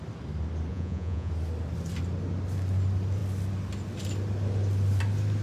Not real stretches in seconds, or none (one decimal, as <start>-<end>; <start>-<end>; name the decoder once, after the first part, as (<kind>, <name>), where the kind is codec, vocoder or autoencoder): 0.7-1.3 (vocoder, Vocos)